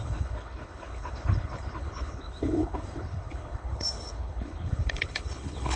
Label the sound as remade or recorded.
remade